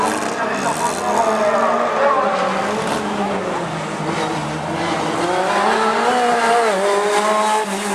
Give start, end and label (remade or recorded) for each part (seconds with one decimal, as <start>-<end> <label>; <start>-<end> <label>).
0.0-7.9 recorded